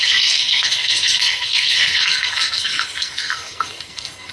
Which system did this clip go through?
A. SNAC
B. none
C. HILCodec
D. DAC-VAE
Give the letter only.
A